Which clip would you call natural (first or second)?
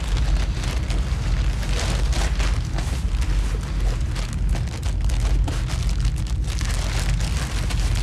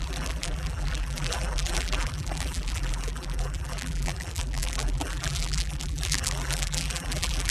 first